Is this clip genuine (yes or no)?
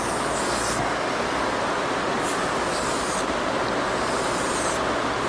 yes